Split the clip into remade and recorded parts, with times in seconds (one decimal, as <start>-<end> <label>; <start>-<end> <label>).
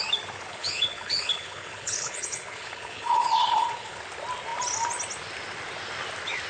0.0-0.5 recorded; 0.5-4.0 remade; 4.0-6.5 recorded